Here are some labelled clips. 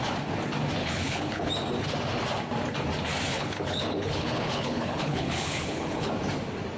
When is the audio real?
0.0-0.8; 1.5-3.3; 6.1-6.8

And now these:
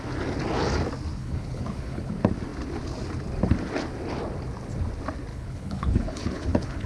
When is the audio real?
0.0-1.1; 2.1-5.3

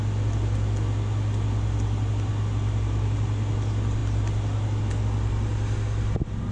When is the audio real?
0.0-6.5

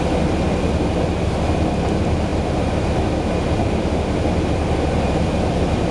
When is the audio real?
0.0-5.9